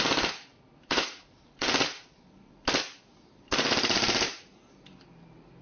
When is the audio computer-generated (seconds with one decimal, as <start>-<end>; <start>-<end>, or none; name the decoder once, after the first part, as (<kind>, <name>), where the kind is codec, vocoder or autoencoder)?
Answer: 0.5-2.5 (vocoder, BigVGAN v2); 3.0-4.6